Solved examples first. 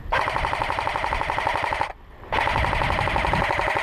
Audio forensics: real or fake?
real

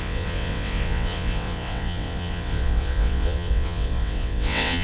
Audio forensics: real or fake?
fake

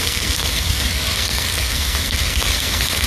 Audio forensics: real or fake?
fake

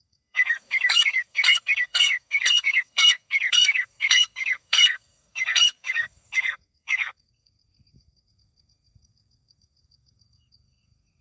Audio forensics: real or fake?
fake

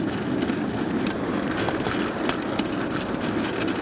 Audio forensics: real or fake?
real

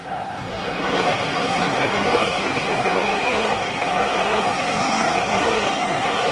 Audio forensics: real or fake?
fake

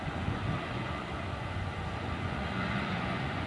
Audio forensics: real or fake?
fake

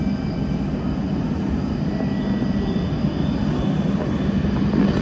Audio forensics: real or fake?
real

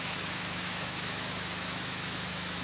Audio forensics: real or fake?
fake